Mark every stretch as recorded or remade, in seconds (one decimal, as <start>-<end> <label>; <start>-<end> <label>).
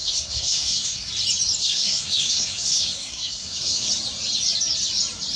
0.0-1.1 remade; 1.1-1.6 recorded; 1.6-3.9 remade; 3.9-5.4 recorded